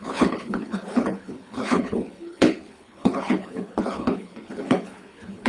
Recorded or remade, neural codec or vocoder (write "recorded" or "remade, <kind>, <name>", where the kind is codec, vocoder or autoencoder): remade, codec, HILCodec